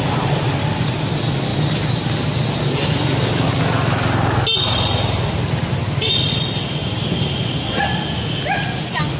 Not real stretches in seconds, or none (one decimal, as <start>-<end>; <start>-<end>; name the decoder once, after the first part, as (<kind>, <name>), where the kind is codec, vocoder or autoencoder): none